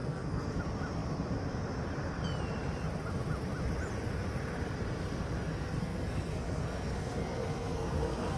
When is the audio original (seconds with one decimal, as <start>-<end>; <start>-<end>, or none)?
0.6-5.5